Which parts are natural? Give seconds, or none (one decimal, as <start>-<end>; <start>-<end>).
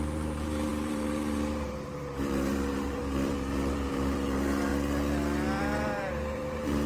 4.7-5.6